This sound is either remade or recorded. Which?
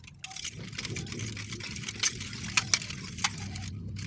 recorded